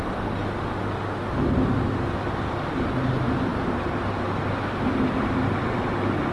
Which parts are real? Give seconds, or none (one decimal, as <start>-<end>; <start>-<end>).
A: 0.0-6.3